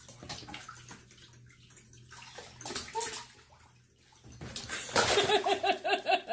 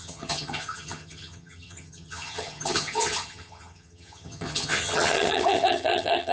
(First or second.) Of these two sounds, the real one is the first